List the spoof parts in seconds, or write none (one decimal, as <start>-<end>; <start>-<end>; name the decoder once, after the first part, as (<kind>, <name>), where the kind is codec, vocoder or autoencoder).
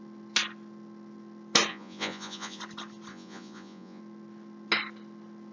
1.7-2.6 (vocoder, Vocos); 3.1-4.0